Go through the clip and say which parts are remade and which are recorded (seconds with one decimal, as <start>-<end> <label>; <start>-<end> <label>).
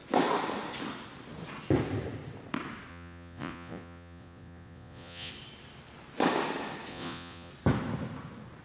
0.0-2.9 recorded; 2.9-5.3 remade; 5.3-6.9 recorded; 6.9-7.5 remade; 7.5-8.6 recorded